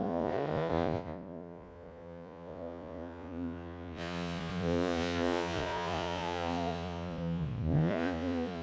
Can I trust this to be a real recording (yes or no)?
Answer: no